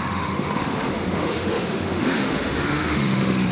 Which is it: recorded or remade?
remade